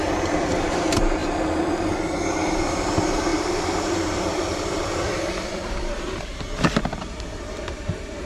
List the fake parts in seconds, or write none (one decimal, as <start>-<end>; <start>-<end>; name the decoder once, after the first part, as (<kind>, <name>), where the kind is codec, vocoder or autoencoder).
0.0-1.2 (vocoder, BigVGAN v2); 2.5-8.3